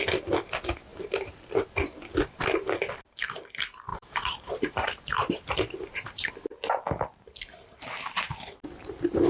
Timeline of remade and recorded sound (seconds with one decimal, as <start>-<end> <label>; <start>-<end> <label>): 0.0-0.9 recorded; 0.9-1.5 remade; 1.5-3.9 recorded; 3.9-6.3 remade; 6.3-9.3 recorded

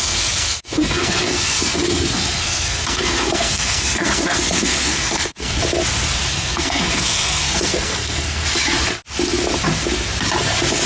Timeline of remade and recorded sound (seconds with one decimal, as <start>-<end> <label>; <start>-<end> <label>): 0.0-5.6 remade; 5.6-6.3 recorded; 6.3-8.4 remade; 8.4-10.9 recorded

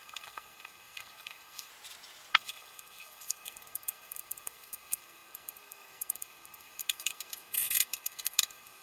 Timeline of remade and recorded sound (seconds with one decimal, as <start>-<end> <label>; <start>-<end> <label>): 0.0-1.7 remade; 1.7-2.3 recorded; 2.3-8.8 remade

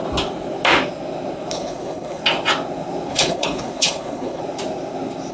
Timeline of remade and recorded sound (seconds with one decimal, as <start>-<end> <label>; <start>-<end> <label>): 0.0-1.5 recorded; 1.5-2.2 remade; 2.2-3.1 recorded; 3.1-4.4 remade; 4.4-5.3 recorded

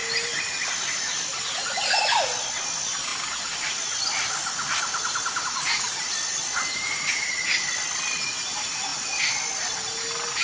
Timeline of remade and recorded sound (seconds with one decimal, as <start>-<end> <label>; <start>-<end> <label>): 0.0-10.4 recorded

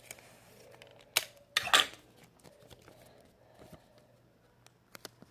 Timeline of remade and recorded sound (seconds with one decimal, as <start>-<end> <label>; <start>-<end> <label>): 0.0-5.3 recorded

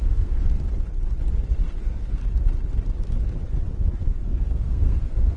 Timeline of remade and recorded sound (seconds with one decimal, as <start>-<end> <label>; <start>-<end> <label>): 0.0-0.5 remade; 0.5-1.8 recorded; 1.8-2.2 remade; 2.2-4.0 recorded; 4.0-5.4 remade